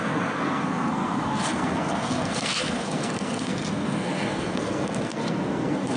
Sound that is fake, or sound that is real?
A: fake